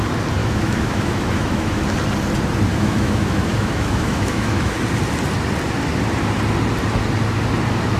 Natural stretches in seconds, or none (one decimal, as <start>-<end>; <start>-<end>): 0.0-0.4; 1.8-2.7; 4.8-8.0